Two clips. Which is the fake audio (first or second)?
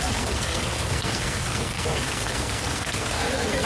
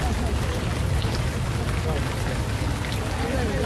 first